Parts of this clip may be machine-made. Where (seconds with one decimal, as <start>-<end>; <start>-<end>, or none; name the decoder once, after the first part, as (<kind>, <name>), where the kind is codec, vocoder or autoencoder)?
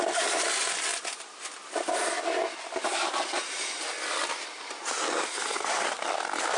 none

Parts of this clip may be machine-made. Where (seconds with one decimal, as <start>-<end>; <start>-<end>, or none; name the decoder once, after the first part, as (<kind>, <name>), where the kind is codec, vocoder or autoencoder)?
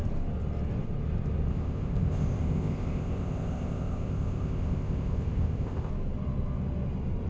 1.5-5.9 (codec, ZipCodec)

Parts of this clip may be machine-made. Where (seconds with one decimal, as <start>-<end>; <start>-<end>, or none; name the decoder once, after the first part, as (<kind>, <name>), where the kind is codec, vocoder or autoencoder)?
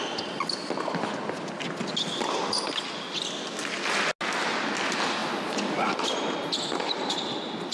none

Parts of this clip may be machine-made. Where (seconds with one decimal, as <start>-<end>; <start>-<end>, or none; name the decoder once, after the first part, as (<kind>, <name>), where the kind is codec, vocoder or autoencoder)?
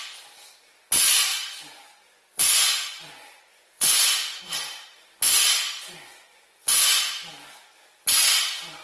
1.3-4.4 (vocoder, Vocos); 6.1-7.0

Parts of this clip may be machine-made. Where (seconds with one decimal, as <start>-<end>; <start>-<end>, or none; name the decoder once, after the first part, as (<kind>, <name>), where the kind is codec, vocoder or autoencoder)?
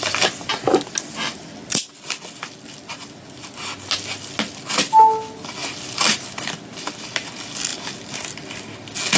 none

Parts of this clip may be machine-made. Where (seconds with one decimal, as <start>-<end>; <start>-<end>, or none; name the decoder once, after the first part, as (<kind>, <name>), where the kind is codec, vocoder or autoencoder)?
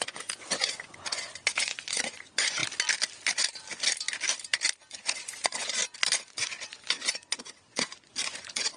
0.0-2.6 (vocoder, Vocos); 4.9-5.8; 6.3-8.8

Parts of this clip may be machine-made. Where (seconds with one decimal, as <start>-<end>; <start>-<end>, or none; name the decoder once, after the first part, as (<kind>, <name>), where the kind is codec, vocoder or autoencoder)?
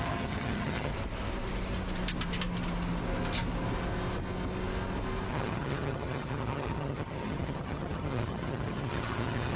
0.0-0.9 (vocoder, HiFi-GAN); 5.3-9.6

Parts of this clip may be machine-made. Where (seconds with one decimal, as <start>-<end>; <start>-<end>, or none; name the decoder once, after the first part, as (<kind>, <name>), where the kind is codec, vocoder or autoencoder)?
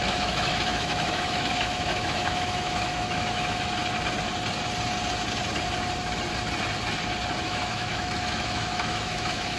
0.0-3.8 (autoencoder, DAC-VAE); 7.4-9.6